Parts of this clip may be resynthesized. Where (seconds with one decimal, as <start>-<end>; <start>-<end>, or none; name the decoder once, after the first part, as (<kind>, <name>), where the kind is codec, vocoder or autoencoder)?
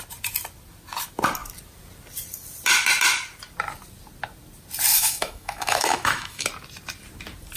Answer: 4.9-6.5 (autoencoder, DAC-VAE)